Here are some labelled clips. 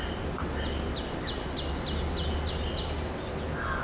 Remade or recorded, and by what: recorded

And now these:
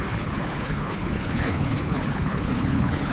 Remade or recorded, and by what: remade, codec, HILCodec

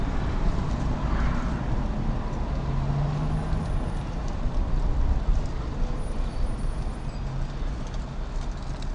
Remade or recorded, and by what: recorded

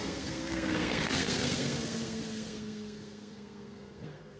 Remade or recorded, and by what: remade, codec, SNAC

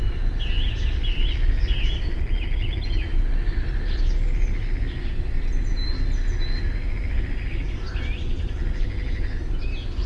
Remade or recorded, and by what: recorded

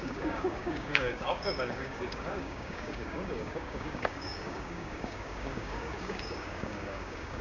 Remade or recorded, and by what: remade, codec, DAC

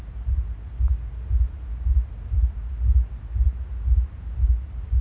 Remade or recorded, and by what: recorded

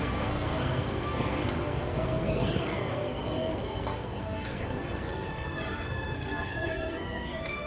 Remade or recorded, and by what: remade, codec, SNAC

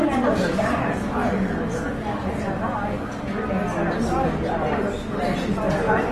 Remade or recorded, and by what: recorded